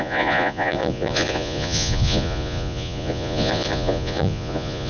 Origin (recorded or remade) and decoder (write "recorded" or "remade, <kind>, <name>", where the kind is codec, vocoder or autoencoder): remade, vocoder, Vocos